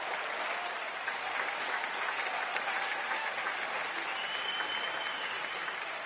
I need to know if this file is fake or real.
real